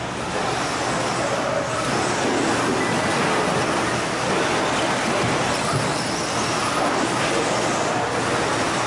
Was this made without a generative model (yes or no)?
yes